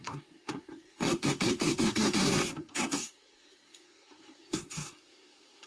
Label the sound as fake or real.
fake